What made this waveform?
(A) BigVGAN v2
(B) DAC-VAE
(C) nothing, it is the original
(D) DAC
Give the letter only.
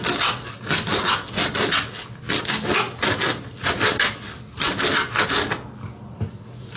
C